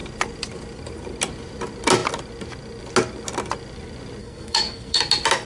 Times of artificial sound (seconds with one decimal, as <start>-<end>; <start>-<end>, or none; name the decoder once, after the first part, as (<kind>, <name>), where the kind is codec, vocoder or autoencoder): 4.2-5.0 (codec, SNAC)

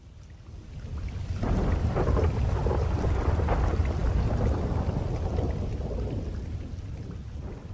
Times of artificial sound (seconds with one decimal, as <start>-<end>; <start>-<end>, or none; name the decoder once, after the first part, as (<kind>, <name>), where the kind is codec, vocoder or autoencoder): none

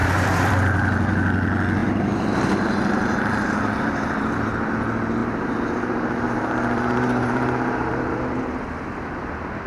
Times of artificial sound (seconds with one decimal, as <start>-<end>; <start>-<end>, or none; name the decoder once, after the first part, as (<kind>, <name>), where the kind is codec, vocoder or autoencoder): 0.0-0.5 (vocoder, BigVGAN v2); 1.8-4.7; 5.2-8.4